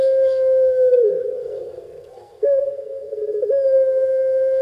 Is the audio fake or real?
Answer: fake